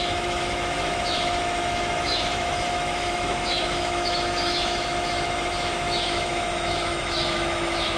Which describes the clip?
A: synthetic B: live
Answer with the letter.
A